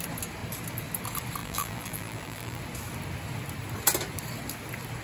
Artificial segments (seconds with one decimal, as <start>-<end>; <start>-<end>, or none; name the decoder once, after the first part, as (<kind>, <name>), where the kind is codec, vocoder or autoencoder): 1.4-2.6 (vocoder, BigVGAN v2)